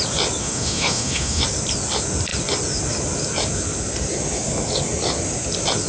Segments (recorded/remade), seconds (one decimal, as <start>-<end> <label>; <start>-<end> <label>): 0.0-0.4 recorded; 0.4-1.4 remade; 1.4-5.9 recorded